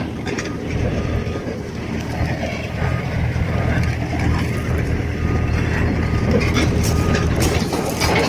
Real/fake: fake